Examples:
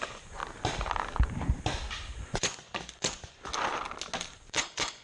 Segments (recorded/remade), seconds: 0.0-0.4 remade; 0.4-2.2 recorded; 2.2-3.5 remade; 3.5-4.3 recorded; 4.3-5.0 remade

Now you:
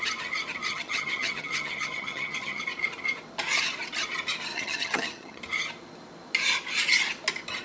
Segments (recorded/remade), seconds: 0.0-0.7 recorded; 0.7-2.6 remade; 2.6-4.5 recorded; 4.5-5.4 remade; 5.4-7.6 recorded

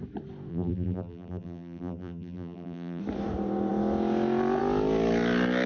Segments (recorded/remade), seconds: 0.0-0.5 recorded; 0.5-3.0 remade; 3.0-5.7 recorded

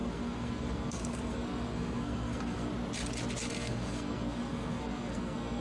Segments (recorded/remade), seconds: 0.0-2.7 remade; 2.7-3.5 recorded; 3.5-5.6 remade